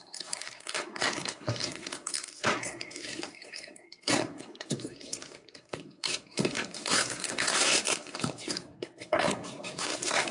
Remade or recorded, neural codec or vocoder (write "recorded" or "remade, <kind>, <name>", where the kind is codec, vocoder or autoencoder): remade, codec, SNAC